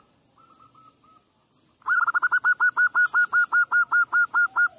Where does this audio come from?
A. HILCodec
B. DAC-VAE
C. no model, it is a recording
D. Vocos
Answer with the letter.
C